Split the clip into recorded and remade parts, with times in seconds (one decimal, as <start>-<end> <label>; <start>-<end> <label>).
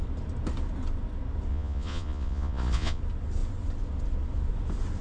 0.0-1.5 recorded; 1.5-3.0 remade; 3.0-5.0 recorded